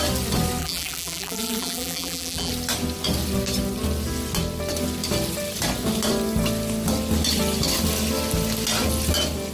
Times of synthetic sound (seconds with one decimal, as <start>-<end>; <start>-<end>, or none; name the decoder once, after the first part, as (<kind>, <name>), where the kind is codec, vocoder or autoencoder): 0.6-2.5 (vocoder, BigVGAN v2)